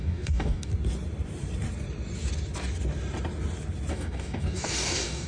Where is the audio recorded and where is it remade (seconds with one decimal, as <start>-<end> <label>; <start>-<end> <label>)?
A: 0.0-0.7 remade; 0.7-3.9 recorded; 3.9-5.3 remade